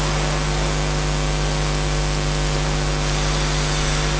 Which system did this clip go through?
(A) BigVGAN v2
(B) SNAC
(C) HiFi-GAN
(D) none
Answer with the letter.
D